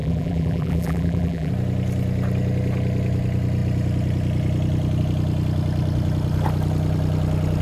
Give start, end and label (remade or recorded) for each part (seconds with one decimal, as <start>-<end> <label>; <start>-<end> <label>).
0.0-1.5 remade; 1.5-7.6 recorded